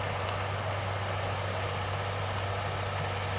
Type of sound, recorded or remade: recorded